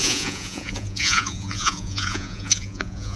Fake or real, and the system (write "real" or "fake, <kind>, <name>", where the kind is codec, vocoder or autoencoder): fake, vocoder, Vocos